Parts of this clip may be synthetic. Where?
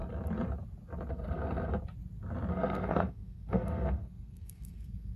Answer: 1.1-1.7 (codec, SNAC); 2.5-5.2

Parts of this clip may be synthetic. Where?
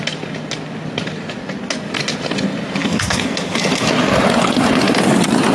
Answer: 2.8-3.9 (codec, SNAC)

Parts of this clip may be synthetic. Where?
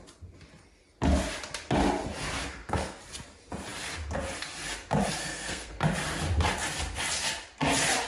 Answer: 2.5-3.0 (codec, SNAC); 5.2-5.8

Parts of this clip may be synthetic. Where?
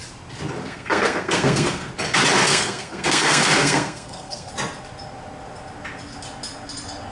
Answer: 0.6-1.9 (codec, SNAC); 2.5-4.5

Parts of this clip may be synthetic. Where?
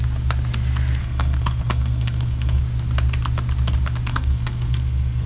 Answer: 1.0-2.6 (codec, SNAC); 4.1-5.3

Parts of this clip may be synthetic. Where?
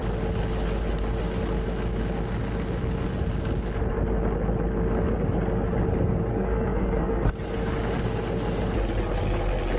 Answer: 6.3-7.3 (codec, SNAC)